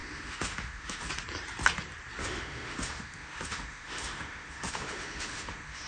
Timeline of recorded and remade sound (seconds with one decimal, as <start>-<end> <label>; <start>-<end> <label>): 0.0-1.1 remade; 1.1-2.2 recorded; 2.2-5.9 remade